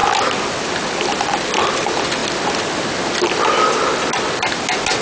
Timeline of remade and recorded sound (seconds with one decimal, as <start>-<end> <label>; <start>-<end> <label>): 0.0-5.0 recorded